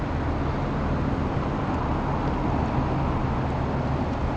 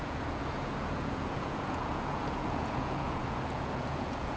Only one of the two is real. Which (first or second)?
first